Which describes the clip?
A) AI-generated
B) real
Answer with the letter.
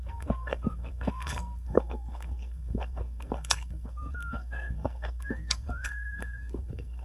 A